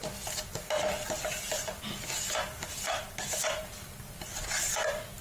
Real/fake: real